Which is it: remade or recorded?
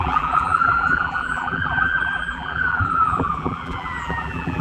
remade